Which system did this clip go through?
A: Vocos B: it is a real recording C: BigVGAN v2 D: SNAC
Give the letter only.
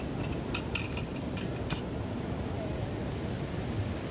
B